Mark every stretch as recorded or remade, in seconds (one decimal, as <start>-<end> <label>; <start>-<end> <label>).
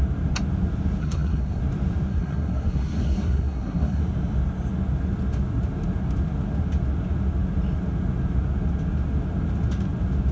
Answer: 0.0-1.0 recorded; 1.0-1.6 remade; 1.6-2.1 recorded; 2.1-4.0 remade; 4.0-10.3 recorded